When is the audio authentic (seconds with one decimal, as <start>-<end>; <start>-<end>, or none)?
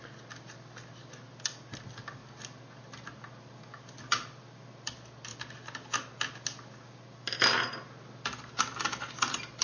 0.0-9.6